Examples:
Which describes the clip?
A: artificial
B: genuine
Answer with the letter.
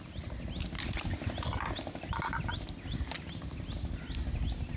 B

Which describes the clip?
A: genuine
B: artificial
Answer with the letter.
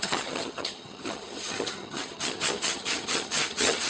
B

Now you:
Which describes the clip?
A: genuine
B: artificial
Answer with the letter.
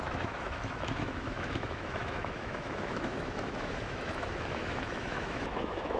B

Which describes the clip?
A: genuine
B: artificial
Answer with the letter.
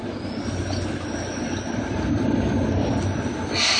A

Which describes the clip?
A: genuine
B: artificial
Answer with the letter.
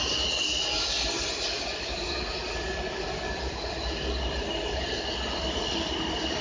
A